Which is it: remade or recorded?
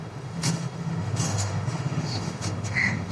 remade